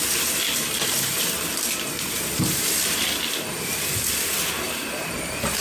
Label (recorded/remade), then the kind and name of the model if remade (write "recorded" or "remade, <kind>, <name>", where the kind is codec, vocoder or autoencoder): remade, vocoder, BigVGAN v2